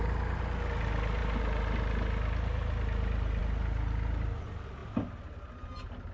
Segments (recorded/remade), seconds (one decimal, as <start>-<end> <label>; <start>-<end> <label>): 0.0-6.1 recorded